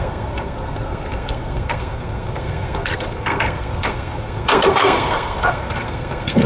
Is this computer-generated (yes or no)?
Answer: yes